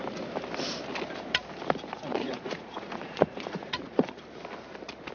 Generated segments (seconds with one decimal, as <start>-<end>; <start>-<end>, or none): 2.1-4.2